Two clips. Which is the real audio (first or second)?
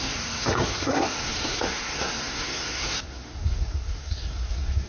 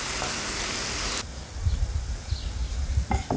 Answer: second